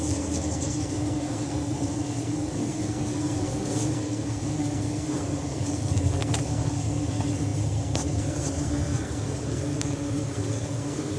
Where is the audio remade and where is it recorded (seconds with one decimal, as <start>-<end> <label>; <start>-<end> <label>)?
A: 0.0-11.2 remade